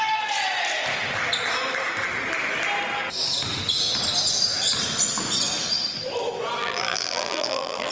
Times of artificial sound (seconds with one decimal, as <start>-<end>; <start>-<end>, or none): 6.6-7.9